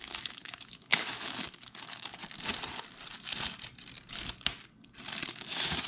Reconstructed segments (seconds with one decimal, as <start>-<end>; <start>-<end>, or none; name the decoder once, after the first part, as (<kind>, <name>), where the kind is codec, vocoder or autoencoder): 0.0-2.2 (autoencoder, DAC-VAE); 5.3-5.9